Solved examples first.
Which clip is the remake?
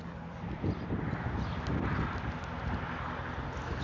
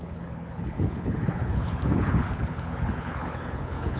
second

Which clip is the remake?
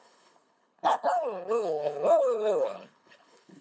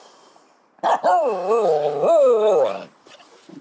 first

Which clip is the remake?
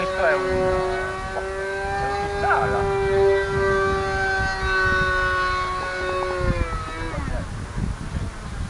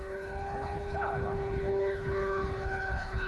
second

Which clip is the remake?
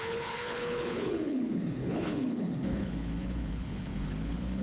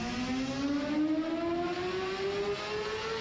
first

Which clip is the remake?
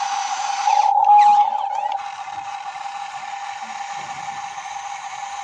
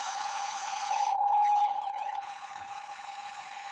second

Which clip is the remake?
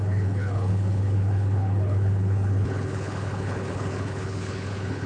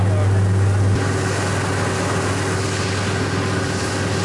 first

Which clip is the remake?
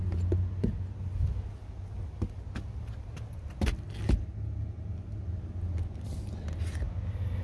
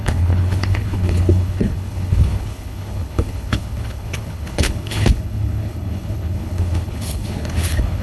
second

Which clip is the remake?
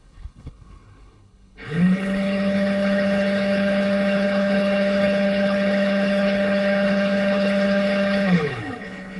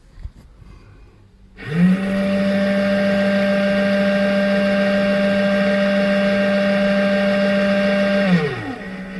first